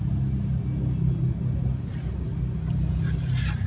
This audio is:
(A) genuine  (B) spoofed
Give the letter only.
A